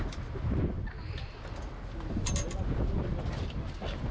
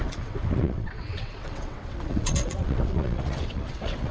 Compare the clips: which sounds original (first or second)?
first